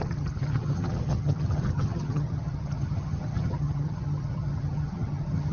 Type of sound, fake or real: fake